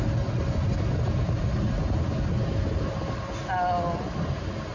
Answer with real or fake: real